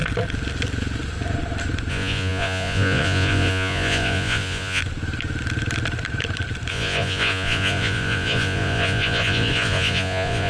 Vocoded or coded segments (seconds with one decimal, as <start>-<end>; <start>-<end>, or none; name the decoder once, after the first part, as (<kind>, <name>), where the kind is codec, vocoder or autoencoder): 1.9-4.8 (vocoder, Vocos); 6.7-10.5

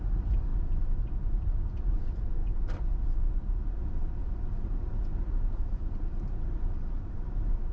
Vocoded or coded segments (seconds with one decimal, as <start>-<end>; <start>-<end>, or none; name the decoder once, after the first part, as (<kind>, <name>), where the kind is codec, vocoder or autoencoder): 4.2-7.7 (vocoder, BigVGAN v2)

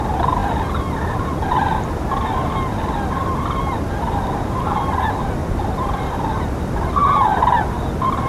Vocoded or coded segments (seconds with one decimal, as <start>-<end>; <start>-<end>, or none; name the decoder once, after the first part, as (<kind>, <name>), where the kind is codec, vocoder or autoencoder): 5.4-6.0 (vocoder, BigVGAN v2)

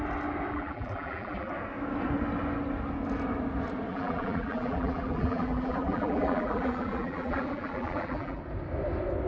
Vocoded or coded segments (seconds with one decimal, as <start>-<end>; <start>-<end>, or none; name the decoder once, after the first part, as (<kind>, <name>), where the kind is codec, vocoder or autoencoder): 0.5-1.5 (vocoder, BigVGAN v2); 3.9-8.4

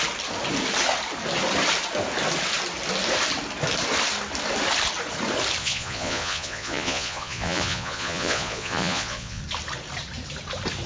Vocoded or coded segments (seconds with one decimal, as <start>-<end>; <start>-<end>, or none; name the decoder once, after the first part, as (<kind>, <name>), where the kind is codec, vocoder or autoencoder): 5.6-9.4 (vocoder, Vocos)